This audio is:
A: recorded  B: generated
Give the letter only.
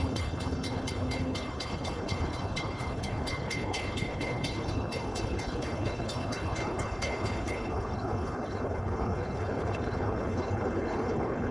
B